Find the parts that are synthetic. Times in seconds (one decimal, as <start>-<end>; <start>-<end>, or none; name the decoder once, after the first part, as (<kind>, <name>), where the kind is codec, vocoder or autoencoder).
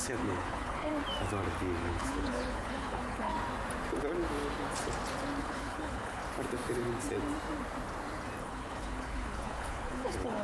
0.0-0.9 (codec, HILCodec); 1.8-3.3; 5.4-6.2; 8.4-10.4